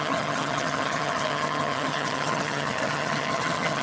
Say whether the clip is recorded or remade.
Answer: remade